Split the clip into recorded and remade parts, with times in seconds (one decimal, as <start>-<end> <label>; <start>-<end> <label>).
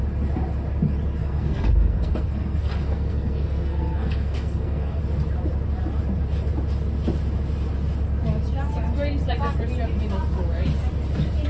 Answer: 0.0-1.2 recorded; 1.2-5.0 remade; 5.0-11.5 recorded